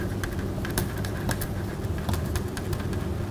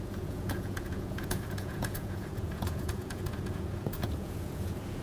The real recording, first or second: first